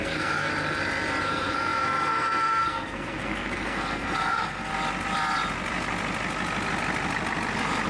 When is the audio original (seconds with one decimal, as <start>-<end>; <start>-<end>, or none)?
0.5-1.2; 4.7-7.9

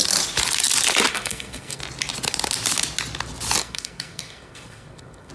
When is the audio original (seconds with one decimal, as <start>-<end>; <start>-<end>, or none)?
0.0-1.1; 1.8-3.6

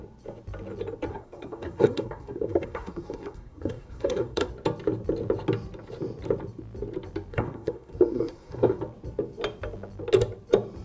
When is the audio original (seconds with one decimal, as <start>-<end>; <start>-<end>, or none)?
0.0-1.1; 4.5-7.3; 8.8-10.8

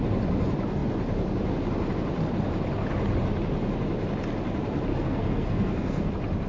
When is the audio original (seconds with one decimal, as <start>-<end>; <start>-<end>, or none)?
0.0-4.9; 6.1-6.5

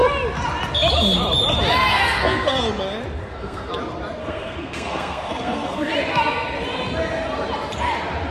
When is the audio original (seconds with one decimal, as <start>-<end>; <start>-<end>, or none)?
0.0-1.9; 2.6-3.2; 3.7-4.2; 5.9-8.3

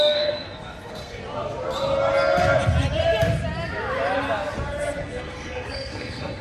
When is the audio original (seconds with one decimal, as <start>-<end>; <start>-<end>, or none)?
1.2-5.0

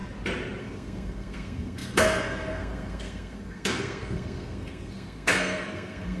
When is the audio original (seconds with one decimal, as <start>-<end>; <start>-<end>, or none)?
0.0-0.6